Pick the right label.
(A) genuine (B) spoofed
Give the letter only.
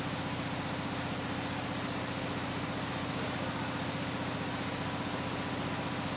A